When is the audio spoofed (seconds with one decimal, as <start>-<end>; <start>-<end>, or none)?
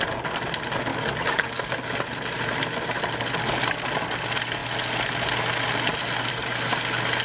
0.9-1.7